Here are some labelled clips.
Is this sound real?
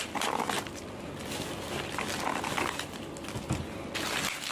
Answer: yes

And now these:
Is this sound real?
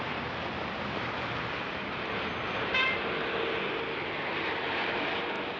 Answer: yes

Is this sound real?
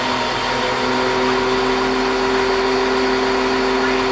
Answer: yes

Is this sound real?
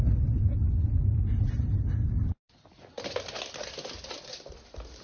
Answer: yes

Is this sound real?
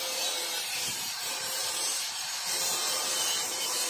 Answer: no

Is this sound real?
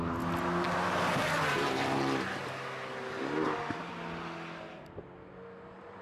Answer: yes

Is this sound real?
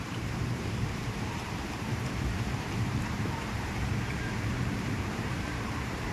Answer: no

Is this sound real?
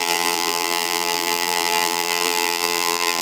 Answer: no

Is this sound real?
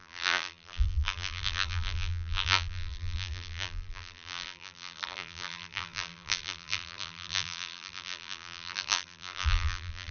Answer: no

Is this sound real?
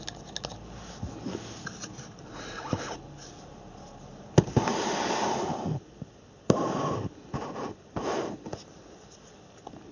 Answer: yes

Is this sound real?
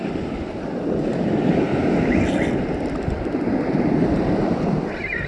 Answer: no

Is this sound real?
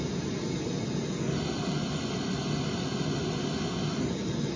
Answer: yes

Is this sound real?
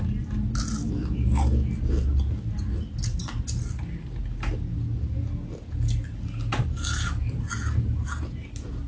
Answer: yes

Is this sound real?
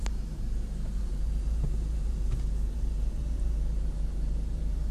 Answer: no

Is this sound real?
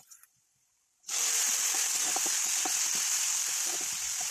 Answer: no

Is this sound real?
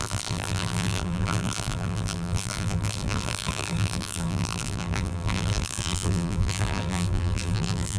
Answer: no